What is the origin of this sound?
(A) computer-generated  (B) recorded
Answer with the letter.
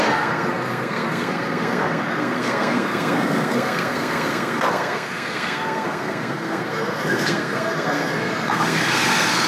A